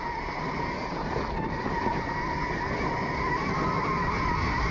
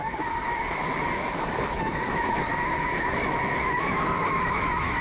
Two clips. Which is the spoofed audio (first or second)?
second